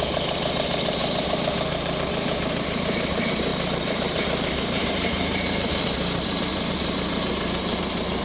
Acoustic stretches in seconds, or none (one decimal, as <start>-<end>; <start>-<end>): 1.0-1.5